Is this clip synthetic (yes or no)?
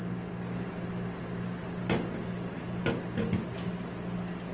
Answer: no